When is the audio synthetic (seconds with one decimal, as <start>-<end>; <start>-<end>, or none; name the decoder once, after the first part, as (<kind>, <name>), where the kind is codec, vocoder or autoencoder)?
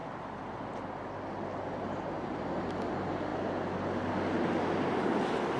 none